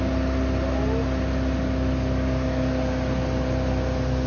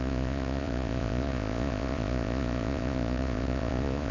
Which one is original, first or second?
first